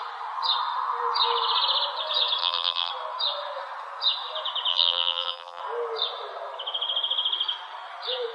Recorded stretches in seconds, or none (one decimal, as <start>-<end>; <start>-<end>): 0.0-2.4; 2.9-4.7; 5.6-8.3